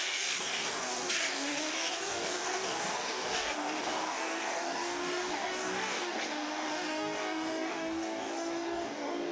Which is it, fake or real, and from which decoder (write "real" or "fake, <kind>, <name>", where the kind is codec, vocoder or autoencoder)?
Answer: fake, codec, DAC